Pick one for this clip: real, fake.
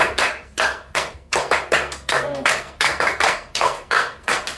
fake